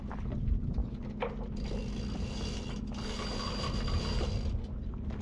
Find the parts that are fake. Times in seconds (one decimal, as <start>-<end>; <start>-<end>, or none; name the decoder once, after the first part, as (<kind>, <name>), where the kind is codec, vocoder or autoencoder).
none

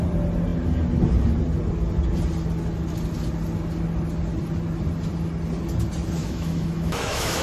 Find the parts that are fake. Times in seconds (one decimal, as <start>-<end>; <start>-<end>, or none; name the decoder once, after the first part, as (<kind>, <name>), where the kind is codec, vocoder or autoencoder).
6.2-7.4 (autoencoder, DAC-VAE)

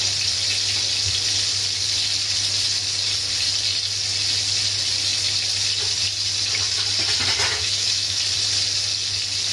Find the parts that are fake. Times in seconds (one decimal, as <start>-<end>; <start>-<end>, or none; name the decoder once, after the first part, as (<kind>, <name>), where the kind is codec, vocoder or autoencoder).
7.5-8.2 (autoencoder, DAC-VAE)

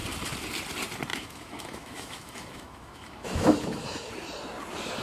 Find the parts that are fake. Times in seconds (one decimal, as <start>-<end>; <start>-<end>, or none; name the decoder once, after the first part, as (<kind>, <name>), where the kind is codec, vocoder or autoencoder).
1.1-4.1 (autoencoder, DAC-VAE)